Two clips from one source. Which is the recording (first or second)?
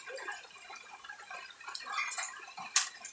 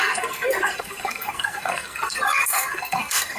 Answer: first